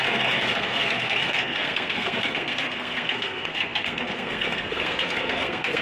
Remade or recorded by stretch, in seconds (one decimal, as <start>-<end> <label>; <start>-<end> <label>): 0.0-5.8 remade